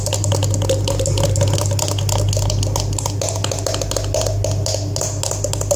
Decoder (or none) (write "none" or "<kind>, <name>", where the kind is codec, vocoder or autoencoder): none